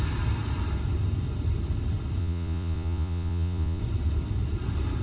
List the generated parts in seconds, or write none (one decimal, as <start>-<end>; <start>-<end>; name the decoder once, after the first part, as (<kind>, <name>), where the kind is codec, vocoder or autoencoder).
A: 2.2-3.8 (vocoder, Vocos)